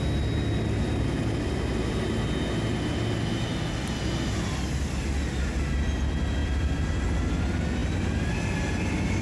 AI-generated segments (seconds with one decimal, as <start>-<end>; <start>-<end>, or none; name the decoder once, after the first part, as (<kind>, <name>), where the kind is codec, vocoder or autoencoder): 6.4-7.0 (vocoder, BigVGAN v2)